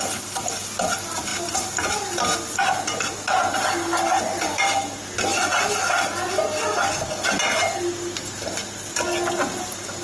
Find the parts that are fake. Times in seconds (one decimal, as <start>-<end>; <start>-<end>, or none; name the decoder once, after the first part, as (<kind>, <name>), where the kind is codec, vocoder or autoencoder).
none